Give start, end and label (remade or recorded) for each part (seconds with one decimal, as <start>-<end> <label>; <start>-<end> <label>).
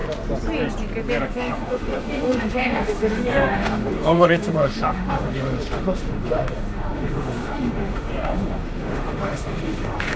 0.0-1.2 recorded; 1.2-10.2 remade